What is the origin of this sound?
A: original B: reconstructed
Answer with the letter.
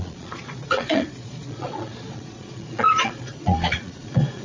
B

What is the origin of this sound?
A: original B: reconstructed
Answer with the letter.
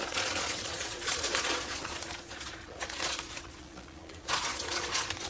B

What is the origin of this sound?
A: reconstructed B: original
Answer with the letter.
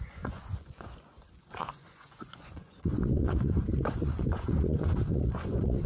A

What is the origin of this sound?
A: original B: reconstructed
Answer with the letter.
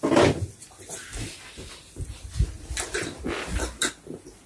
A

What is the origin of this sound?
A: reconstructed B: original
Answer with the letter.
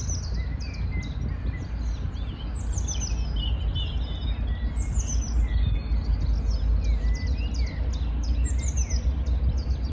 B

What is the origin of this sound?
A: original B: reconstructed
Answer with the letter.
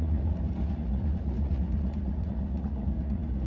B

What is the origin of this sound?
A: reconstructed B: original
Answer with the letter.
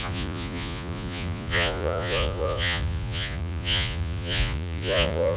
A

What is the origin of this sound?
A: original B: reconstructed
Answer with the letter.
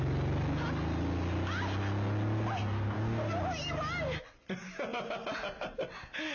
A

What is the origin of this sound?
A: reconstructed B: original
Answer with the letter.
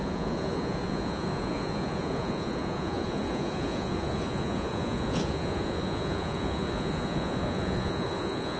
A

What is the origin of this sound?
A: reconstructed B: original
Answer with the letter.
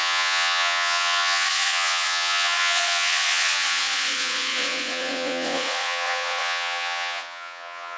A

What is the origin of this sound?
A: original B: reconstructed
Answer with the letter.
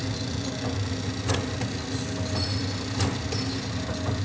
A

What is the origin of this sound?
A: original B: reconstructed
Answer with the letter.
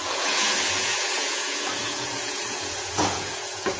B